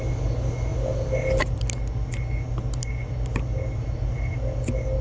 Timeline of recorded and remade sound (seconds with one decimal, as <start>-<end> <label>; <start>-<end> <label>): 0.0-5.0 recorded